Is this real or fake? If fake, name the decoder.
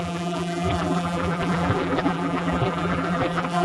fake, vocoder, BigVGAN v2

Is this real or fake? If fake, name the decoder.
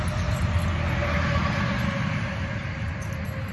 real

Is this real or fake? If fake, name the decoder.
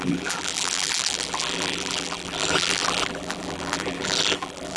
fake, vocoder, BigVGAN v2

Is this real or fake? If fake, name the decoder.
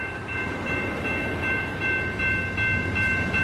fake, vocoder, BigVGAN v2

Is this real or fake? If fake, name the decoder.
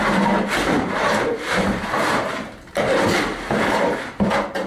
fake, vocoder, BigVGAN v2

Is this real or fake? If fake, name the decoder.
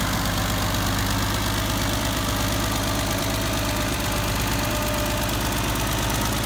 fake, vocoder, BigVGAN v2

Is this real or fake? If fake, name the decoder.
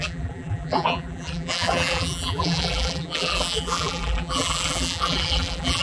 fake, vocoder, BigVGAN v2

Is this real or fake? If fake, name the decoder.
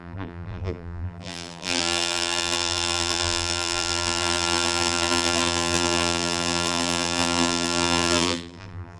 fake, vocoder, BigVGAN v2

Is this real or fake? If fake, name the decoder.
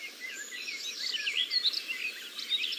fake, vocoder, BigVGAN v2